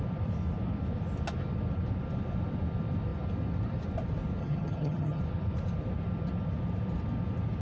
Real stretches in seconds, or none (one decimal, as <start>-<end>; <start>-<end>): 0.0-4.4; 5.2-7.6